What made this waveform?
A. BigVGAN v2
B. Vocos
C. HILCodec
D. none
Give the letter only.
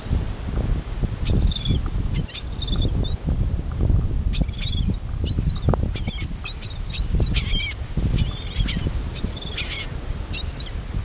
D